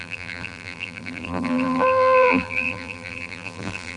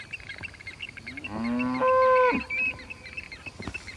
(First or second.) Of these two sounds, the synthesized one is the first